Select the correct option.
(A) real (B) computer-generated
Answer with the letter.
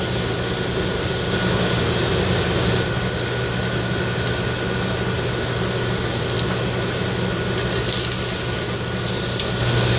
A